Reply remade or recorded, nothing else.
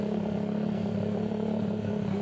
remade